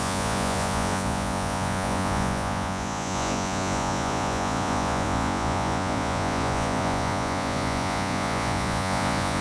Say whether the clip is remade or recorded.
remade